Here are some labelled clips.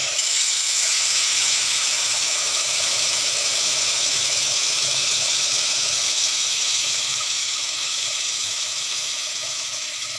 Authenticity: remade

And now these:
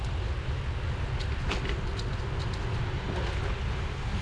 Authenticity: recorded